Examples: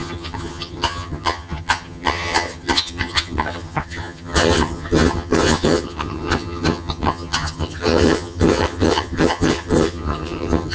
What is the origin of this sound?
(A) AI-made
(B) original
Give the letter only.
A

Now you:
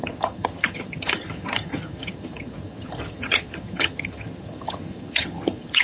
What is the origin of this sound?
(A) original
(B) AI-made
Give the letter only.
B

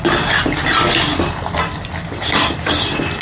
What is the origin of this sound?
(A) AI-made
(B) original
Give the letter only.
B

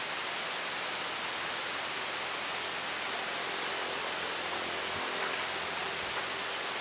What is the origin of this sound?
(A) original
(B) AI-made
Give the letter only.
A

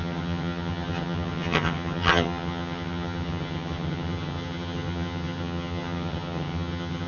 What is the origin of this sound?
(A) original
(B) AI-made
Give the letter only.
B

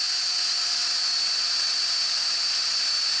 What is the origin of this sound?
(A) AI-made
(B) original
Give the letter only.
B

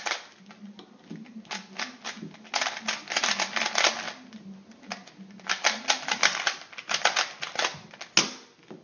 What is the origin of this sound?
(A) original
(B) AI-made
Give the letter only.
A